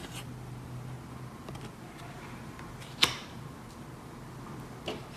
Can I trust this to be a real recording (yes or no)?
yes